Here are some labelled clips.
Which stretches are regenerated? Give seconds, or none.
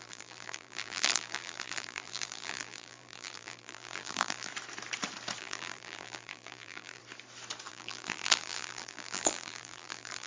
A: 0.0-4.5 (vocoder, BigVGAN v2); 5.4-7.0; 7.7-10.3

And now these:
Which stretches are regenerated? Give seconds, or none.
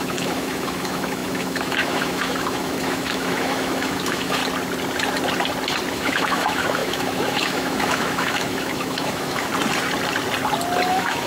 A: 0.0-4.4 (autoencoder, DAC-VAE); 5.9-9.5; 10.9-11.3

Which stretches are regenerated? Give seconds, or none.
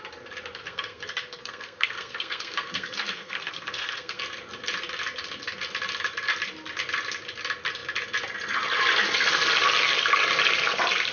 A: 0.6-4.2 (codec, SNAC)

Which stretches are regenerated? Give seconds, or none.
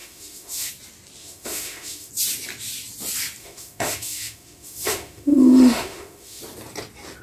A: 0.0-0.7 (autoencoder, DAC-VAE); 1.2-2.1; 3.4-6.4